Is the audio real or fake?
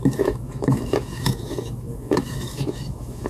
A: fake